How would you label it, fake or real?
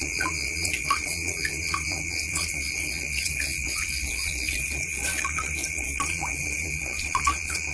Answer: fake